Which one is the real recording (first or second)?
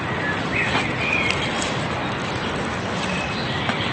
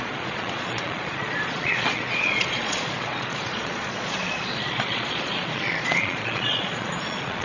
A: first